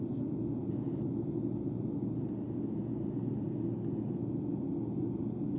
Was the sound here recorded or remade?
recorded